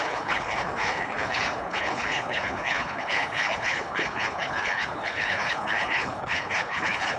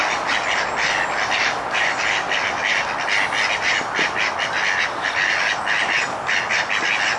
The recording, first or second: second